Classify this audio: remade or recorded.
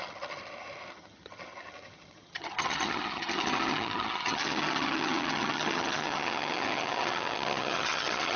remade